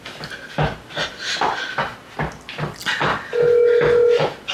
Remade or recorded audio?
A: recorded